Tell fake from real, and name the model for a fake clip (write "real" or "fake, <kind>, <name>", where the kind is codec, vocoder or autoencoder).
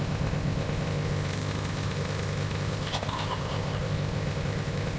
fake, codec, ZipCodec